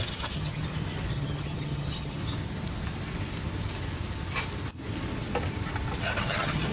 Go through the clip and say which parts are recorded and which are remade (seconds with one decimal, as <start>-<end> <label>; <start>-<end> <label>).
0.0-0.6 remade; 0.6-1.1 recorded; 1.1-2.2 remade; 2.2-6.2 recorded; 6.2-6.7 remade